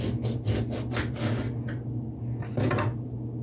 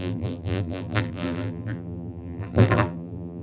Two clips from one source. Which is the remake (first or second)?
second